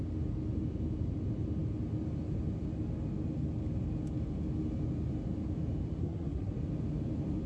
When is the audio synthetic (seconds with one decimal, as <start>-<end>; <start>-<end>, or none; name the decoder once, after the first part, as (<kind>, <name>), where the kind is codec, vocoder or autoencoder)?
6.0-6.5 (codec, SNAC)